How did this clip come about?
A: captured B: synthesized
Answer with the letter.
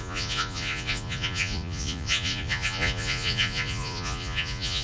B